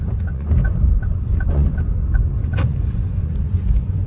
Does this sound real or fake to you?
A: fake